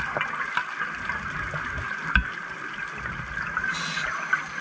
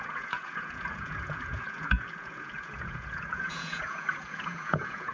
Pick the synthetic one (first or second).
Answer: second